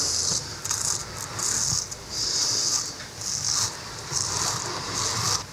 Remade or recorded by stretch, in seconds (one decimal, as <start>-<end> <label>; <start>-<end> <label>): 0.0-5.5 recorded